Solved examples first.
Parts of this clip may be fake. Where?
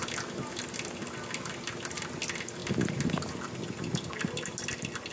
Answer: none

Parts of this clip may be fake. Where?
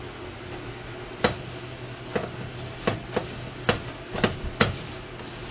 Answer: none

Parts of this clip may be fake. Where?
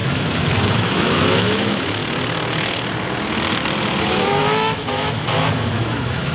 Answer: 0.0-2.0 (autoencoder, DAC-VAE); 4.0-6.3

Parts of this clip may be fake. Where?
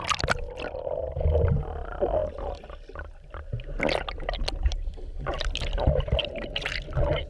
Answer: none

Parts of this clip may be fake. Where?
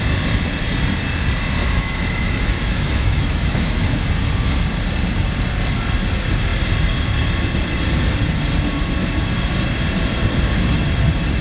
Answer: 1.6-4.0 (autoencoder, DAC-VAE)